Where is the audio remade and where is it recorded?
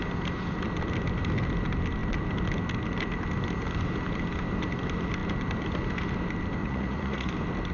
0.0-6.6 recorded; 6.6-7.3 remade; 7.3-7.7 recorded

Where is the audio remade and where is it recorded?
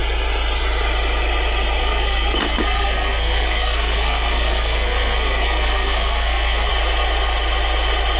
0.0-1.8 recorded; 1.8-6.7 remade; 6.7-8.2 recorded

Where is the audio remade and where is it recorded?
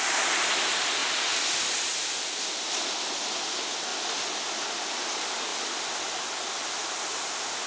0.0-1.0 recorded; 1.0-1.9 remade; 1.9-3.9 recorded; 3.9-4.7 remade; 4.7-7.7 recorded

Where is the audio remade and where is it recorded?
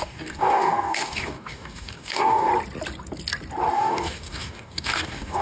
0.0-2.5 remade; 2.5-3.7 recorded; 3.7-5.4 remade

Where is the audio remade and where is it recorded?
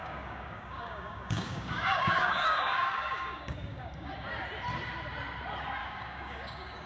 0.0-4.1 remade; 4.1-5.8 recorded; 5.8-6.9 remade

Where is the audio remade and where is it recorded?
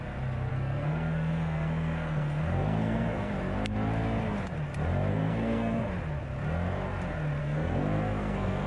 0.0-0.5 recorded; 0.5-3.3 remade; 3.3-5.1 recorded; 5.1-5.9 remade; 5.9-7.4 recorded; 7.4-8.7 remade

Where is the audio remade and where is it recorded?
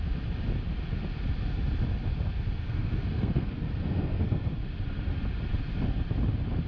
0.0-2.6 recorded; 2.6-4.5 remade; 4.5-6.7 recorded